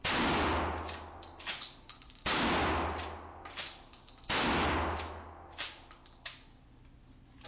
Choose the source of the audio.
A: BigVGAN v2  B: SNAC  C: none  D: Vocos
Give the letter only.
C